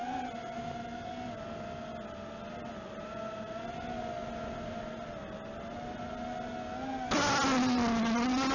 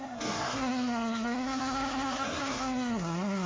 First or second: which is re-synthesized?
second